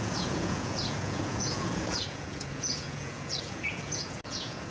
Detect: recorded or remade remade